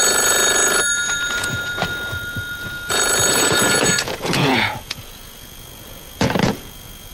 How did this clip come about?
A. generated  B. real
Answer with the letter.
A